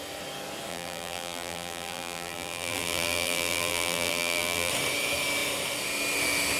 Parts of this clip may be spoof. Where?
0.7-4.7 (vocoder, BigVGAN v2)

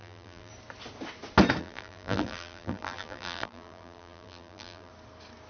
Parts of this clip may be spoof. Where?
0.0-0.5 (vocoder, BigVGAN v2); 1.6-4.9

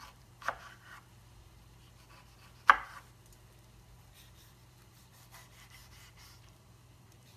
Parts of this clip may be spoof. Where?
0.0-1.8 (vocoder, BigVGAN v2); 4.1-5.8; 6.4-7.4

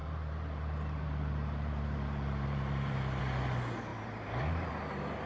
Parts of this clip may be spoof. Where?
0.0-3.2 (vocoder, BigVGAN v2); 3.9-4.7